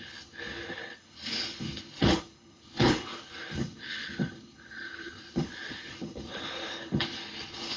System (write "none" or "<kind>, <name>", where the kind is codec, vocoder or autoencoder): codec, HILCodec